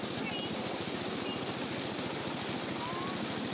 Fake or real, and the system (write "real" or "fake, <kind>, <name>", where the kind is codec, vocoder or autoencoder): real